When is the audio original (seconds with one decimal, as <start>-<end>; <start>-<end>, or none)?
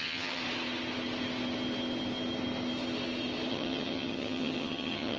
0.4-3.5